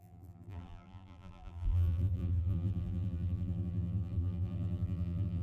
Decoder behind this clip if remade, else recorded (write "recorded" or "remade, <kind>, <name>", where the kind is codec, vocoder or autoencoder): remade, vocoder, BigVGAN v2